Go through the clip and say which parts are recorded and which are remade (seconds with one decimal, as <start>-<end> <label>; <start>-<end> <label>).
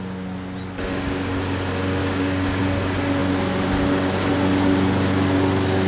0.0-2.0 recorded; 2.0-2.6 remade; 2.6-5.9 recorded